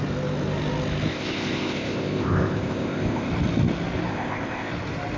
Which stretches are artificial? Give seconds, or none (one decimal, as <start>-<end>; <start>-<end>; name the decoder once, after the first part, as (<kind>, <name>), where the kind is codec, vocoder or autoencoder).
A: 1.1-3.3 (codec, ZipCodec); 4.1-4.7